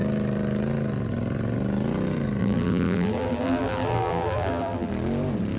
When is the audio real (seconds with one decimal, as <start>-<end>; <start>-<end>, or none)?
0.0-2.4; 4.9-5.6